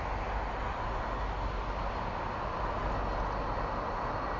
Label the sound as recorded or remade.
recorded